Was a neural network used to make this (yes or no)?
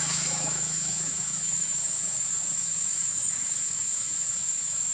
yes